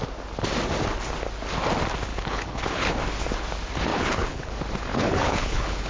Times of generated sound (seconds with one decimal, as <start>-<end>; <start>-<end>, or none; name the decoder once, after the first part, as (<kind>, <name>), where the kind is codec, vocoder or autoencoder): 2.1-2.9 (codec, HILCodec); 3.9-4.5; 4.9-5.9